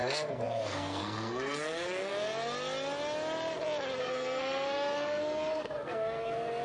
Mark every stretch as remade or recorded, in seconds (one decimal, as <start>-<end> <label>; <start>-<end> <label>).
0.0-2.1 remade; 2.1-4.0 recorded; 4.0-6.6 remade